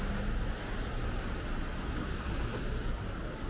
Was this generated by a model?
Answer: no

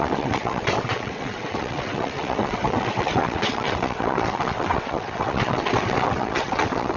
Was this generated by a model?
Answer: yes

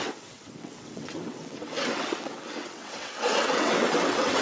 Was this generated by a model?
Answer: yes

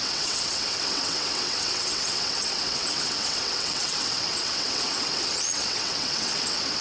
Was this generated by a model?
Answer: yes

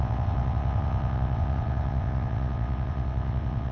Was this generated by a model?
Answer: yes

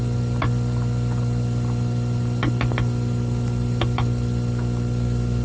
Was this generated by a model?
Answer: no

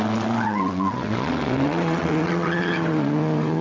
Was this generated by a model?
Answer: yes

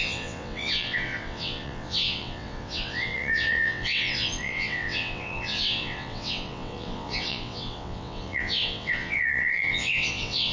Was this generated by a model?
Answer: yes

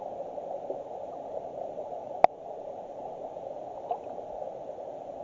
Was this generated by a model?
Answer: no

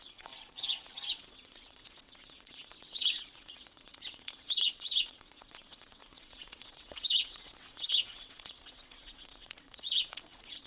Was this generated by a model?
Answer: yes